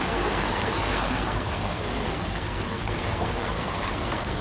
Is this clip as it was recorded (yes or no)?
no